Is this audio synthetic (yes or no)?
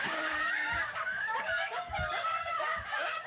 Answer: yes